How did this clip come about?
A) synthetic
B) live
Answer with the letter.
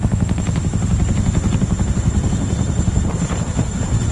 A